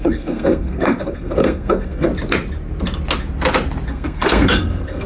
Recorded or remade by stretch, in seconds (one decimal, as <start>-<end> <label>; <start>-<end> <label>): 0.0-2.1 remade; 2.1-3.9 recorded; 3.9-5.1 remade